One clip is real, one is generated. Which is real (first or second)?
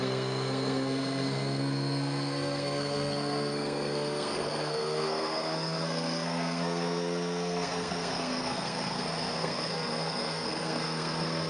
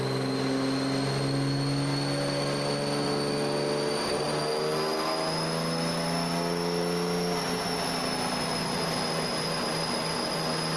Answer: second